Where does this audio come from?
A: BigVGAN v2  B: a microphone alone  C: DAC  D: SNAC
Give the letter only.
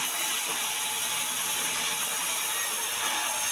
B